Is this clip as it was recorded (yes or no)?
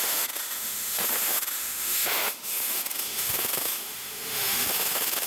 no